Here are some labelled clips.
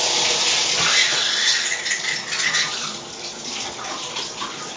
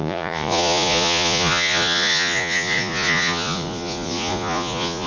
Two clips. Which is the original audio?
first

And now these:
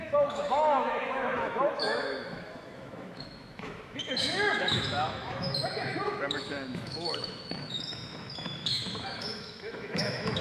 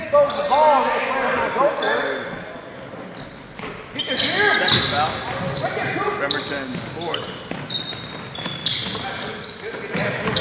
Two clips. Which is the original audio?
second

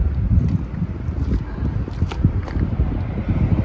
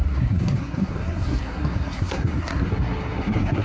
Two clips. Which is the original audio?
first